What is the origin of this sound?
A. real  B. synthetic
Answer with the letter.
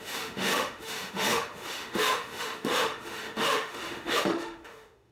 B